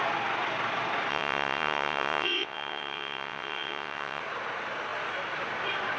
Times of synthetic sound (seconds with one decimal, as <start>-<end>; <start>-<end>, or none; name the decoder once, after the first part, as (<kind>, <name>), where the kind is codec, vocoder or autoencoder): 1.1-4.2 (vocoder, WaveNeXt)